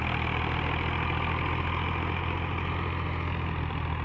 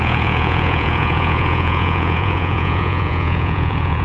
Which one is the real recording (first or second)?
first